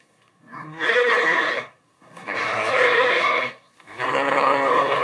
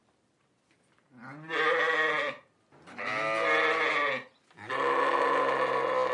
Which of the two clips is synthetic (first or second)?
first